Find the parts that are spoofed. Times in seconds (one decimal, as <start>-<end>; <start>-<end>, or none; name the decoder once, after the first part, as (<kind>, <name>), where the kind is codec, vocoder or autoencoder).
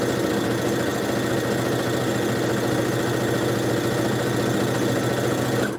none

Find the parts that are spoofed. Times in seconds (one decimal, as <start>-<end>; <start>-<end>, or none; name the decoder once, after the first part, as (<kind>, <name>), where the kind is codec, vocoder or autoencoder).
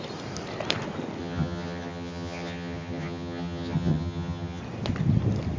1.2-4.6 (vocoder, HiFi-GAN)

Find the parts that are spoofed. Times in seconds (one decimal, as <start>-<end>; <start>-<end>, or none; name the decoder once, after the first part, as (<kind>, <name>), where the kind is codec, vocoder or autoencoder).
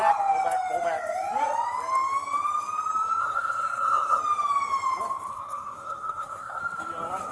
3.2-4.2 (codec, SNAC); 5.3-6.6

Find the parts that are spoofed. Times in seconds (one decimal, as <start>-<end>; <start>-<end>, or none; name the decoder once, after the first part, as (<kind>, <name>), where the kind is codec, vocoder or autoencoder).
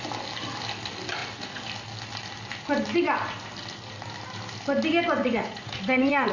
5.2-6.3 (vocoder, Vocos)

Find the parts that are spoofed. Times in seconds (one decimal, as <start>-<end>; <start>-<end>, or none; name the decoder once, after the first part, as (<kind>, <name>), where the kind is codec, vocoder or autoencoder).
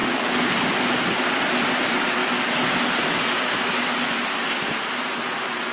none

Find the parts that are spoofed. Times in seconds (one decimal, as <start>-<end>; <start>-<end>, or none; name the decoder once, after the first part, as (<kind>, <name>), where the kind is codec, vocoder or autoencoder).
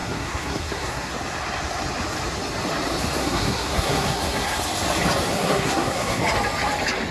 0.0-1.1 (codec, SNAC); 3.2-4.6; 5.3-6.2